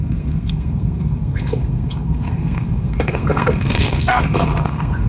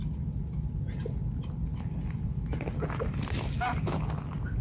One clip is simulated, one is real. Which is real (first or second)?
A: second